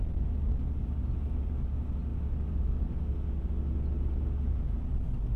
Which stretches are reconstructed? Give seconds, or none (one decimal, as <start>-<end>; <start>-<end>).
none